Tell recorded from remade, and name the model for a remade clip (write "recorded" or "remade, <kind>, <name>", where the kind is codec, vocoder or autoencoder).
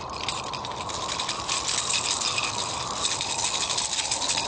recorded